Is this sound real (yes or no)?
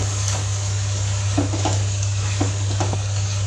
no